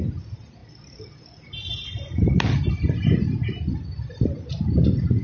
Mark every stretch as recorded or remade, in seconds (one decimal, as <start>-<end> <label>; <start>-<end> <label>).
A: 0.0-5.2 recorded

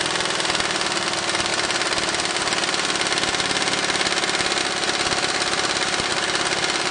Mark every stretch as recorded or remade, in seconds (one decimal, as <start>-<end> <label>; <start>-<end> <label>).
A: 0.0-1.5 remade; 1.5-4.6 recorded; 4.6-6.9 remade

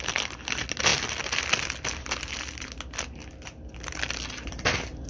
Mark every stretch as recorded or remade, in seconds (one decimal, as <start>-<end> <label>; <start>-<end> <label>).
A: 0.0-5.1 recorded

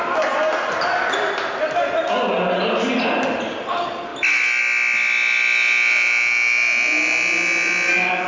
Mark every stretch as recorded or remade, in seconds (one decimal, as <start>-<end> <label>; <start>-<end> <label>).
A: 0.0-8.3 recorded